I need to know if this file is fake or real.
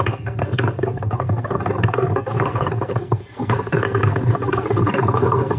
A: fake